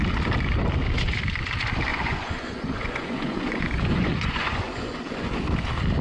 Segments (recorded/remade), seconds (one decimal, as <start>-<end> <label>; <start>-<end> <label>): 0.0-1.9 recorded; 1.9-5.5 remade; 5.5-6.0 recorded